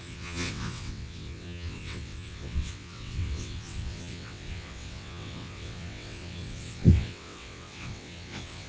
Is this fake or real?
fake